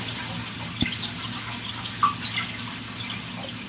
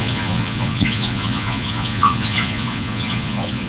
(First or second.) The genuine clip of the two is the first